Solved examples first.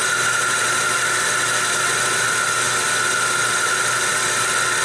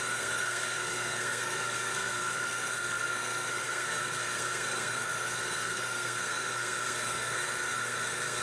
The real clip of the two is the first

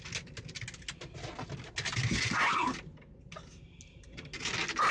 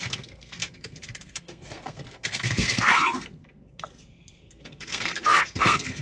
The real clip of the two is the first